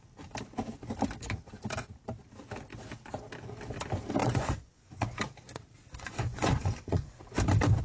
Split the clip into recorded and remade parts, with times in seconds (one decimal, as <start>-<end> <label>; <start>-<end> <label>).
0.0-4.2 recorded; 4.2-5.2 remade; 5.2-5.9 recorded; 5.9-7.2 remade; 7.2-7.8 recorded